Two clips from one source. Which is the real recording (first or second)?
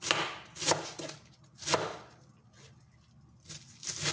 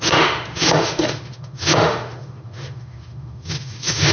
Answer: first